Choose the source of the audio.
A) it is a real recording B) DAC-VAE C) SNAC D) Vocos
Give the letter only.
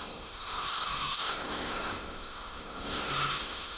C